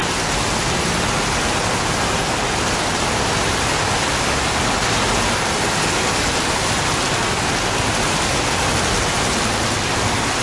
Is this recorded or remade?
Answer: recorded